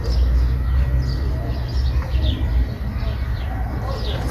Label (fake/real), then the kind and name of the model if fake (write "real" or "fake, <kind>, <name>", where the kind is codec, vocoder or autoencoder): real